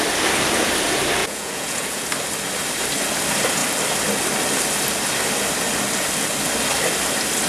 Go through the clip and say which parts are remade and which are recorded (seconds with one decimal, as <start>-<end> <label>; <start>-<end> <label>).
0.0-1.2 recorded; 1.2-2.1 remade; 2.1-7.5 recorded